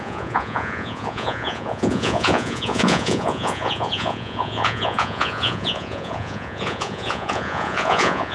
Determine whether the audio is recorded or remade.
remade